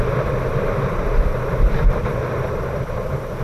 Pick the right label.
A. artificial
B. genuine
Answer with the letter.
B